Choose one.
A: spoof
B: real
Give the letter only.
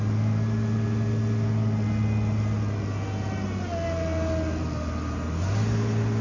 B